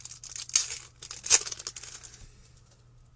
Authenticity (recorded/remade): recorded